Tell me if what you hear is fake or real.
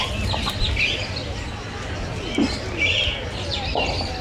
real